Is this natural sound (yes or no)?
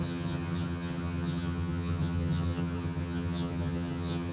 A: no